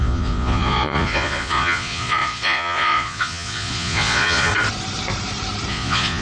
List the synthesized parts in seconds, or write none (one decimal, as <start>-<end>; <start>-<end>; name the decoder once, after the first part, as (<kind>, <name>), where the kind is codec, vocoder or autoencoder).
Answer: 0.0-4.5 (vocoder, Vocos); 5.7-6.2